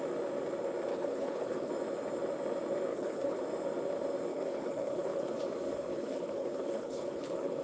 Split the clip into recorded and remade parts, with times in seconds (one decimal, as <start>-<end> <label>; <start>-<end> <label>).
0.0-0.9 recorded; 0.9-1.7 remade; 1.7-2.9 recorded; 2.9-3.4 remade; 3.4-4.3 recorded; 4.3-5.4 remade; 5.4-5.9 recorded; 5.9-7.6 remade